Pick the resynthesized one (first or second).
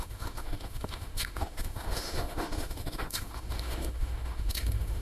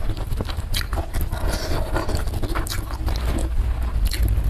first